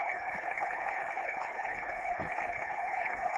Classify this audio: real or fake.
fake